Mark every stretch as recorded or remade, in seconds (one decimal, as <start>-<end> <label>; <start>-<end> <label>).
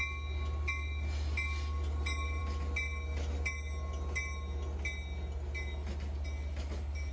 0.0-7.1 recorded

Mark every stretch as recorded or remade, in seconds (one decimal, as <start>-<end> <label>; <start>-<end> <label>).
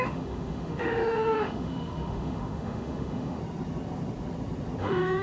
0.0-3.4 remade; 3.4-4.8 recorded; 4.8-5.2 remade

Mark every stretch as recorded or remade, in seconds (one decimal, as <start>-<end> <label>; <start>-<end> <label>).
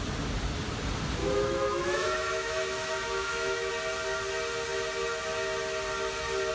0.0-1.2 recorded; 1.2-3.7 remade; 3.7-6.5 recorded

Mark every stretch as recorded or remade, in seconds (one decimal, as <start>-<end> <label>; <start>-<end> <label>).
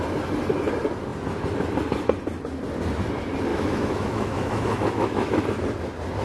0.0-3.5 recorded; 3.5-5.5 remade; 5.5-6.2 recorded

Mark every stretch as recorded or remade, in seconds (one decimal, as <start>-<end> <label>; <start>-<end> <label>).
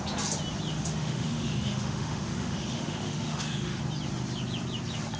0.0-0.7 recorded; 0.7-3.8 remade; 3.8-5.2 recorded